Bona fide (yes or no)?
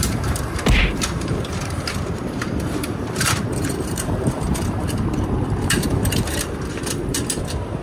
no